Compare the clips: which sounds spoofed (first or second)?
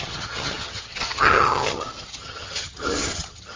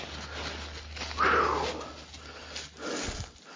first